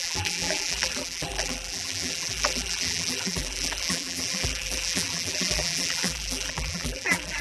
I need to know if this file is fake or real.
fake